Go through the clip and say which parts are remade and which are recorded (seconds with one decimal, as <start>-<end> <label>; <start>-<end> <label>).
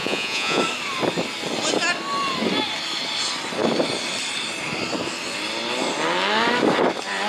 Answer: 0.0-0.6 remade; 0.6-7.3 recorded